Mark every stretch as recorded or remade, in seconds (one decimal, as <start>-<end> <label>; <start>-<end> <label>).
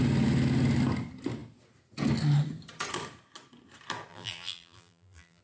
0.0-4.1 recorded; 4.1-5.4 remade